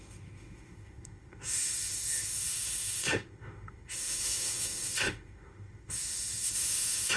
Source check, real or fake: fake